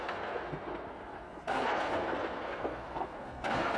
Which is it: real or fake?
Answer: fake